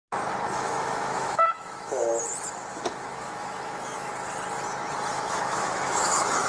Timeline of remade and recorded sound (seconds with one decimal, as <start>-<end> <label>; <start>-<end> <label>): 0.0-0.5 recorded; 0.5-2.1 remade; 2.1-2.7 recorded; 2.7-4.1 remade; 4.1-5.1 recorded; 5.1-6.5 remade